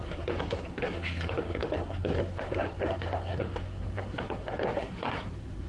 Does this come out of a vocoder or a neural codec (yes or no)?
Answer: yes